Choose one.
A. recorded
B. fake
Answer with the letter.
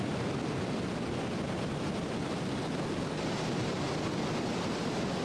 A